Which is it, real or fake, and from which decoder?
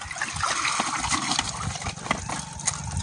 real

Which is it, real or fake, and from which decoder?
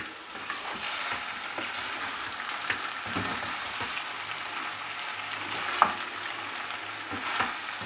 real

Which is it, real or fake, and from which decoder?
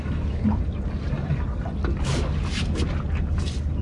real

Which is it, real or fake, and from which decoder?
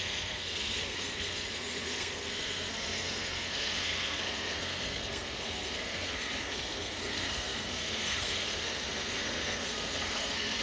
fake, codec, SNAC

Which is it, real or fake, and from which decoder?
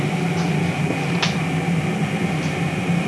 real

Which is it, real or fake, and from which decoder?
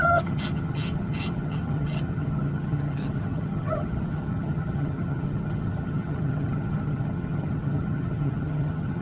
fake, vocoder, HiFi-GAN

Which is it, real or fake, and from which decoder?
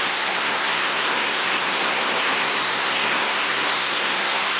fake, codec, SNAC